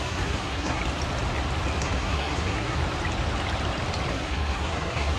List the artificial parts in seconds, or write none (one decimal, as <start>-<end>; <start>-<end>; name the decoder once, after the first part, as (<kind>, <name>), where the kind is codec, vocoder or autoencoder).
0.0-0.8 (codec, SNAC); 1.8-2.8; 4.1-5.2